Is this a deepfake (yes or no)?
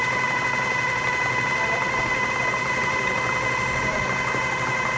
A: no